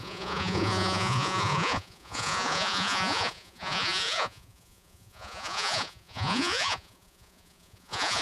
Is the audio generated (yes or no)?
yes